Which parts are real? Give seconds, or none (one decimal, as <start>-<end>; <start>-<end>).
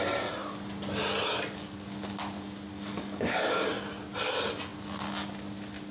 0.0-2.7; 3.7-5.9